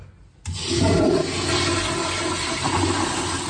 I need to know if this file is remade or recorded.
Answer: recorded